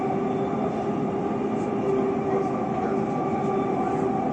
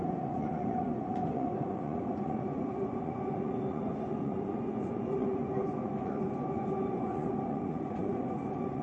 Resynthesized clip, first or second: second